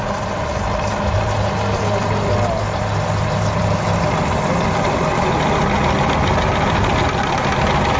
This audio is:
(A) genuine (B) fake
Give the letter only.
A